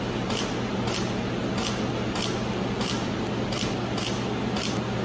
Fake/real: real